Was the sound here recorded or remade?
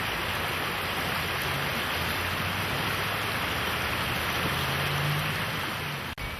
recorded